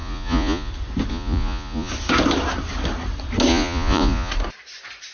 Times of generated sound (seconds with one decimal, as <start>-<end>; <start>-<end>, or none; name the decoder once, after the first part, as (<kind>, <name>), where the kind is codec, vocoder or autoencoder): 0.0-0.7 (vocoder, Vocos); 1.1-1.9; 3.5-4.3